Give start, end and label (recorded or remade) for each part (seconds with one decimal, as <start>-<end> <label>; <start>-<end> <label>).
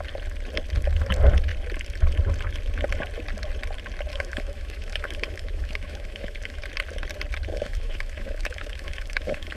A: 0.0-4.1 recorded; 4.1-6.6 remade; 6.6-7.5 recorded; 7.5-9.6 remade